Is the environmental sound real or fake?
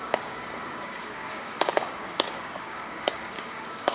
fake